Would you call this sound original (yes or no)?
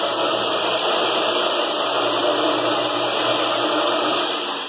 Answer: yes